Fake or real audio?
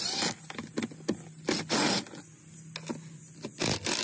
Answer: real